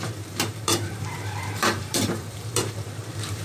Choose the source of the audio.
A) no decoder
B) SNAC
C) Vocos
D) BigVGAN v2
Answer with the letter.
D